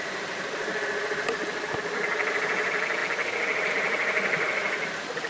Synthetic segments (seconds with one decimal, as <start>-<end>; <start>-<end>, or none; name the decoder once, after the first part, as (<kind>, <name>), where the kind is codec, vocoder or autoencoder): none